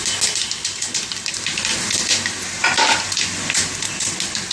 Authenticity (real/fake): real